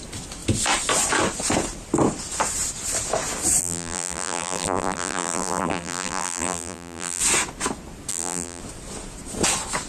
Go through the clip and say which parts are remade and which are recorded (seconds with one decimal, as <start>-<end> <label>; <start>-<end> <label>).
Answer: 0.0-3.6 recorded; 3.6-7.2 remade; 7.2-8.1 recorded; 8.1-8.6 remade; 8.6-9.9 recorded

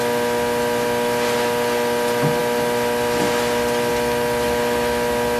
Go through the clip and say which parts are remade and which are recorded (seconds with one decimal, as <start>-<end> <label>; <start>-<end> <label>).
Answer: 0.0-5.4 recorded

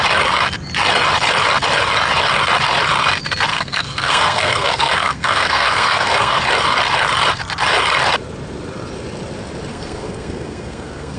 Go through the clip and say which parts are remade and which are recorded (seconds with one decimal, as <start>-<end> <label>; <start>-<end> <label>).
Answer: 0.0-3.5 recorded; 3.5-6.4 remade; 6.4-9.7 recorded; 9.7-11.2 remade

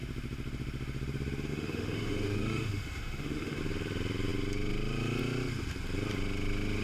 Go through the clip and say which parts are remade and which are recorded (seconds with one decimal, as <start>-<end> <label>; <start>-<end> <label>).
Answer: 0.0-1.5 recorded; 1.5-3.6 remade; 3.6-6.8 recorded

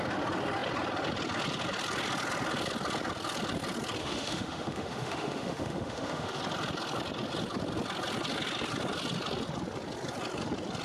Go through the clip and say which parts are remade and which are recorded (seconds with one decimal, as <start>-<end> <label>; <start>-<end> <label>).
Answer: 0.0-4.0 recorded; 4.0-6.4 remade; 6.4-10.8 recorded

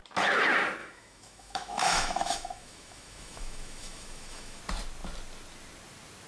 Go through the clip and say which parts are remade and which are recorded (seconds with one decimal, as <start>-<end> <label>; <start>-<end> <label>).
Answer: 0.0-0.8 recorded; 0.8-4.6 remade; 4.6-6.3 recorded